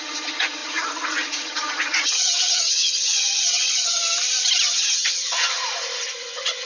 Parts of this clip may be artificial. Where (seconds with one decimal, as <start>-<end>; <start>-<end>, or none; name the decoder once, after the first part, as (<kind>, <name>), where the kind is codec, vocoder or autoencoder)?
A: 0.0-4.0 (vocoder, HiFi-GAN); 4.6-6.7